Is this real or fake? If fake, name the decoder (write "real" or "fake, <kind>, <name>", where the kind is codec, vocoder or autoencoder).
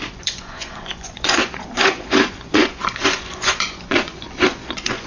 fake, vocoder, Vocos